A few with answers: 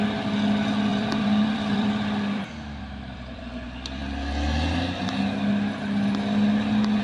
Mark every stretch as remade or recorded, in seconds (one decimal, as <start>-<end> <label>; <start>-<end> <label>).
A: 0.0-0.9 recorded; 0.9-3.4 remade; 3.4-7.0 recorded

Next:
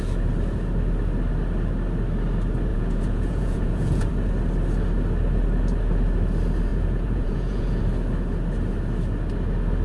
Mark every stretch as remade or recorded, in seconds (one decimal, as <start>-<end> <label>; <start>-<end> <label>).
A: 0.0-2.7 recorded; 2.7-4.1 remade; 4.1-6.7 recorded; 6.7-7.8 remade; 7.8-9.8 recorded

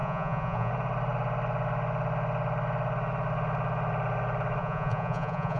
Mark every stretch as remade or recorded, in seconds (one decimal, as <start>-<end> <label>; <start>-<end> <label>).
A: 0.0-0.7 remade; 0.7-4.6 recorded; 4.6-5.6 remade

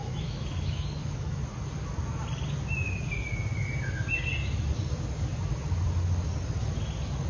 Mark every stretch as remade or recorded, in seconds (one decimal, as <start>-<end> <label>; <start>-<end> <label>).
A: 0.0-1.4 remade; 1.4-7.3 recorded

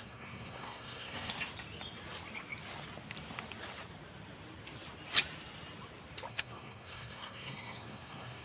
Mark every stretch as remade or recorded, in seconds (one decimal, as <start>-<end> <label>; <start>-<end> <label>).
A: 0.0-1.3 remade; 1.3-6.3 recorded; 6.3-8.4 remade

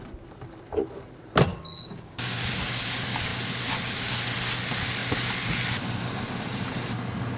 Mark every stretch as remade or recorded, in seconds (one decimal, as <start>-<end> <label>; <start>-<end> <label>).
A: 0.0-1.5 recorded; 1.5-2.5 remade; 2.5-7.4 recorded

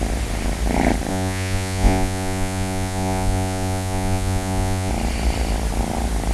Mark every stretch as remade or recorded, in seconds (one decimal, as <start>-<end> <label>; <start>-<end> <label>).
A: 0.0-1.1 recorded; 1.1-4.9 remade; 4.9-6.3 recorded

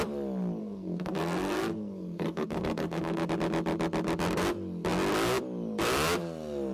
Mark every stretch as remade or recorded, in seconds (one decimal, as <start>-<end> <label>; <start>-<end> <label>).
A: 0.0-0.6 recorded; 0.6-3.3 remade; 3.3-6.7 recorded